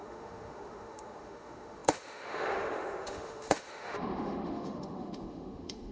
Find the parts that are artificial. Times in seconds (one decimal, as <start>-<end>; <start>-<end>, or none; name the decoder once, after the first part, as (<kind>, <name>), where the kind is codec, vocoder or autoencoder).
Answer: 0.0-5.9 (autoencoder, DAC-VAE)

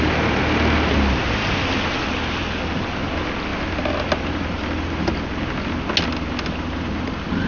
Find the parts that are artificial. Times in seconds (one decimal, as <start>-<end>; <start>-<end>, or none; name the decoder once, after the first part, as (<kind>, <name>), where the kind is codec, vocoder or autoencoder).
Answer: none

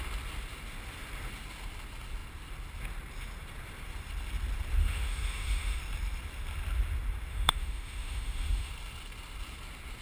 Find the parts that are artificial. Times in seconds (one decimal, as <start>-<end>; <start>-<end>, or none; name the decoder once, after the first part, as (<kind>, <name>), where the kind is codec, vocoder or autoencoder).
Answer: 4.8-5.8 (autoencoder, DAC-VAE); 7.3-8.7

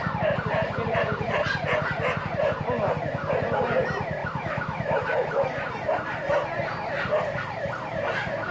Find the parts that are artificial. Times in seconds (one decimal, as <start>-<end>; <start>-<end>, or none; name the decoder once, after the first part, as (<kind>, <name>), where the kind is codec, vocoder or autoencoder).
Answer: 4.2-5.7 (autoencoder, DAC-VAE)

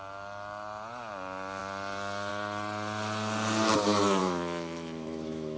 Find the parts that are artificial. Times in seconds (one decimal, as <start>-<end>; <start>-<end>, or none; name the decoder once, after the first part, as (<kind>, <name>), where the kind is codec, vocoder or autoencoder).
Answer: 4.2-5.6 (autoencoder, DAC-VAE)

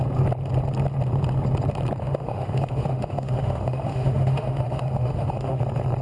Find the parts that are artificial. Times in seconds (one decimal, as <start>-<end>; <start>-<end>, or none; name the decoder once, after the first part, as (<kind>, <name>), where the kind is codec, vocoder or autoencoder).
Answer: 2.0-5.6 (autoencoder, DAC-VAE)

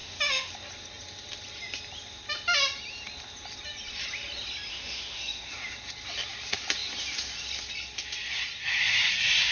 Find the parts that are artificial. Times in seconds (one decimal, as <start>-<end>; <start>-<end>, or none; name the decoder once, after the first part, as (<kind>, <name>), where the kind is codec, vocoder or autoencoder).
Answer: 0.0-0.5 (autoencoder, DAC-VAE); 4.7-5.5